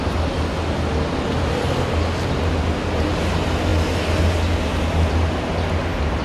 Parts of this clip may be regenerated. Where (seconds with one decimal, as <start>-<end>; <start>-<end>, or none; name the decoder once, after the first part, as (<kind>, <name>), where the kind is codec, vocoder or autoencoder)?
none